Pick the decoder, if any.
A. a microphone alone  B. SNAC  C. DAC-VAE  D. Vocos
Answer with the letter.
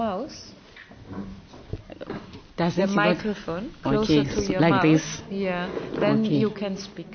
A